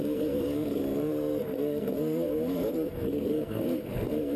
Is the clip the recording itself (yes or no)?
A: no